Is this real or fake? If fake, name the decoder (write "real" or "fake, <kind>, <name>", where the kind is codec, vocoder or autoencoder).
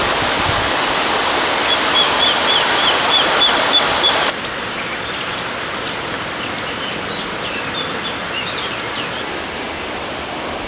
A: fake, vocoder, BigVGAN v2